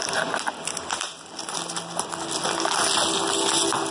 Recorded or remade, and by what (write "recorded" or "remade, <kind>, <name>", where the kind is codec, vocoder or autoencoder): recorded